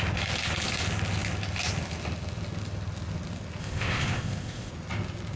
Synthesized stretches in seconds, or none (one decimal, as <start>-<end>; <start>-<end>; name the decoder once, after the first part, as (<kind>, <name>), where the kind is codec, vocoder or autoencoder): 3.6-4.7 (codec, ZipCodec)